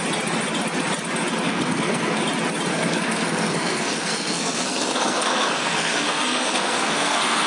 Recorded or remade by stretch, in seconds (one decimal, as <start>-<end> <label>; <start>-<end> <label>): 0.0-1.5 recorded; 1.5-2.2 remade; 2.2-2.7 recorded; 2.7-7.5 remade